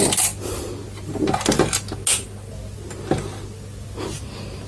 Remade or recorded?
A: recorded